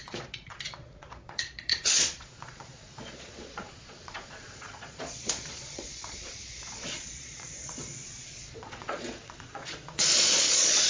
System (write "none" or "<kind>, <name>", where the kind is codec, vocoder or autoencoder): vocoder, Vocos